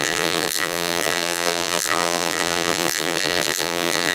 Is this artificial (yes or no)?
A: yes